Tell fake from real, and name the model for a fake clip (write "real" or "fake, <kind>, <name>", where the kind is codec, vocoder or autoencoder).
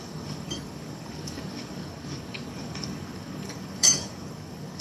fake, codec, DAC